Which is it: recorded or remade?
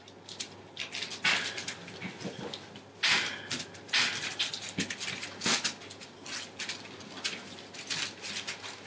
recorded